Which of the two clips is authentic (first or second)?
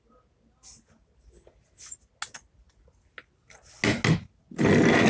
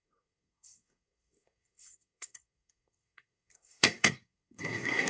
first